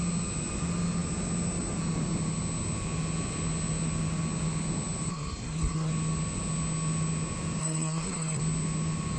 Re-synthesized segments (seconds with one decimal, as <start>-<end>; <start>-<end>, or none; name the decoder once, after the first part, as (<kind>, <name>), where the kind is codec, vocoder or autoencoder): 5.1-5.9 (codec, SNAC); 7.6-8.4